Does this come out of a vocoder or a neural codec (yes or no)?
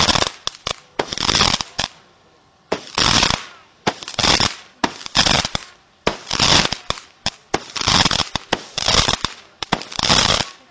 no